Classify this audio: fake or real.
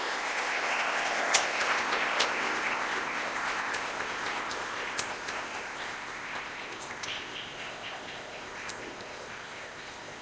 fake